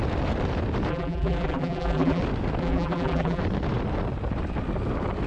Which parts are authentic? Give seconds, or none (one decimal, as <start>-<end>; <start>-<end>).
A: 0.0-0.9; 2.2-2.6; 3.4-5.3